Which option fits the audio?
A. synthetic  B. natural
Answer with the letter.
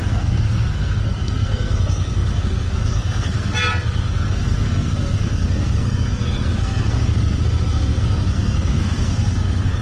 A